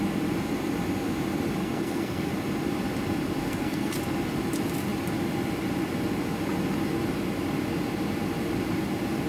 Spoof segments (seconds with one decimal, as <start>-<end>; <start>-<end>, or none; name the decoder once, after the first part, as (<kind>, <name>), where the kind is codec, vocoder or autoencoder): 1.6-2.3 (codec, SNAC); 3.4-4.0